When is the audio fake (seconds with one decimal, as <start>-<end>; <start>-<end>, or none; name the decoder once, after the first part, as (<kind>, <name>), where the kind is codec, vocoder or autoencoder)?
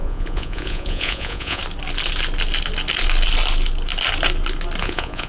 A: 0.0-1.6 (vocoder, Vocos); 4.8-5.3